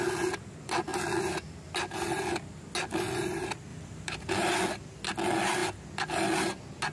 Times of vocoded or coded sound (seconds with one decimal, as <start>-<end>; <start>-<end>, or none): 3.7-4.5